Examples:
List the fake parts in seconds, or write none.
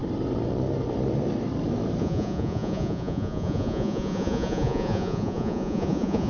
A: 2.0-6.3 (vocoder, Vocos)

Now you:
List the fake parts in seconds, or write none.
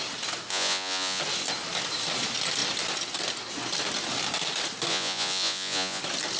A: 0.5-1.2 (vocoder, Vocos); 4.9-6.0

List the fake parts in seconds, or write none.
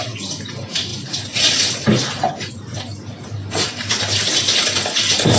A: none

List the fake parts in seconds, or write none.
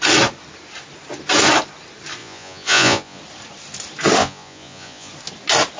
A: 2.2-3.2 (vocoder, Vocos); 4.2-5.1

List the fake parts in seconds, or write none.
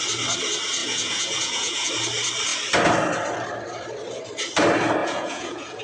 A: 0.8-1.9 (vocoder, Vocos); 5.0-5.8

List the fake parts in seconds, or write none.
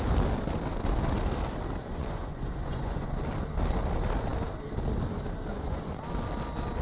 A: 1.8-3.2 (vocoder, Vocos); 5.5-6.0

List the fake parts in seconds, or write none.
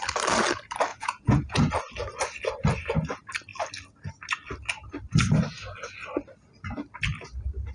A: 0.9-1.7 (vocoder, Vocos)